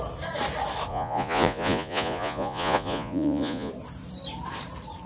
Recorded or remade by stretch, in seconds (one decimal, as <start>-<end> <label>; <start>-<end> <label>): 0.0-0.9 recorded; 0.9-3.7 remade; 3.7-5.1 recorded